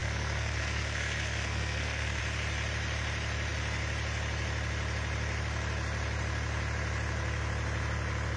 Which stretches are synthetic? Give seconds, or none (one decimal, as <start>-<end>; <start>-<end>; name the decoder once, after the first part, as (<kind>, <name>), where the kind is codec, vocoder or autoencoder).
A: 0.0-2.2 (codec, SNAC)

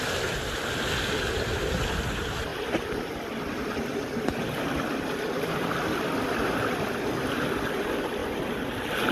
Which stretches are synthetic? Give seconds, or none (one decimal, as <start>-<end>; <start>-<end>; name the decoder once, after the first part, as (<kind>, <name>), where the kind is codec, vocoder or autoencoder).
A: none

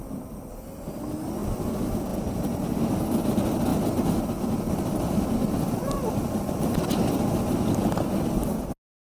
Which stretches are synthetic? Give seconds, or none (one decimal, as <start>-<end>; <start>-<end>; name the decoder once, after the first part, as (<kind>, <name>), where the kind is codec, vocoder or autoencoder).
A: none